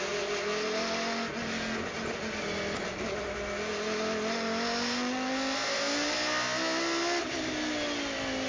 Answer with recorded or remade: recorded